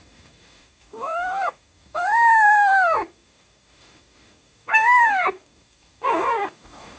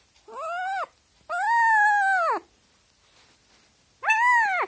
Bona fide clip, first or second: second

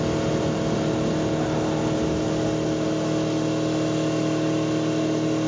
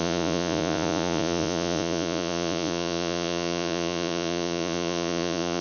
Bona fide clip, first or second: first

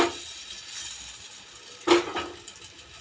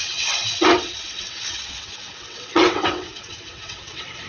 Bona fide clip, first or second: first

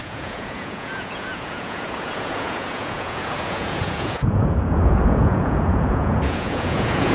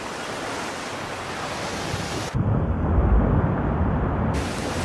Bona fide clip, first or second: second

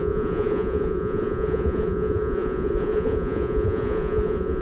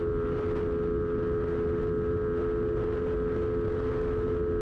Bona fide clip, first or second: second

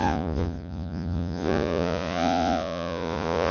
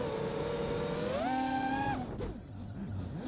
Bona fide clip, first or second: second